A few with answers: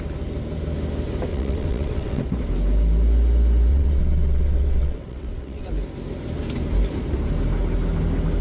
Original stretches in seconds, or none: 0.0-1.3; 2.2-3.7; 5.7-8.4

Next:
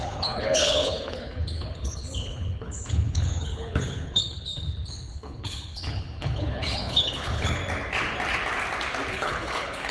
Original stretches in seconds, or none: 7.6-9.1

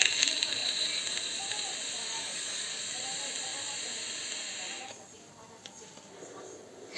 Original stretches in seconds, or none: 0.0-2.0; 2.8-7.0

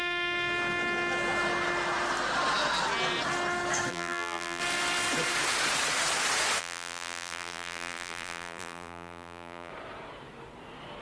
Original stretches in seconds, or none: 0.0-3.9; 4.6-6.6; 9.7-11.0

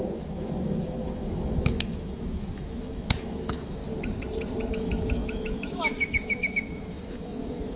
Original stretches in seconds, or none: 3.8-4.7

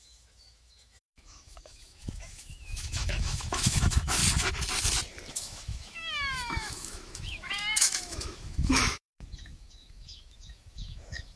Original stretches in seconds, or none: 4.2-5.3

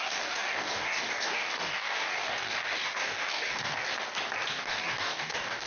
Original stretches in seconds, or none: 3.9-4.5

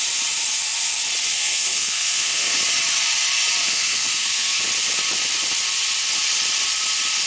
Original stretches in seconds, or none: 0.0-1.3; 2.6-3.6; 4.6-7.3